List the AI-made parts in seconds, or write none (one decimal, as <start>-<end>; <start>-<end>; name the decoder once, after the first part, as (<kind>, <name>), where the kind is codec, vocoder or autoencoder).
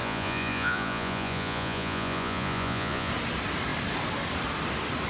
0.0-3.1 (vocoder, Vocos)